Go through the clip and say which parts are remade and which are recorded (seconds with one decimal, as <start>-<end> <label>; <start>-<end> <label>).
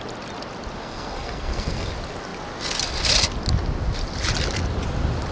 0.0-0.8 recorded; 0.8-1.9 remade; 1.9-5.3 recorded